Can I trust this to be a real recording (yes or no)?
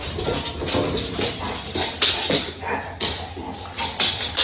yes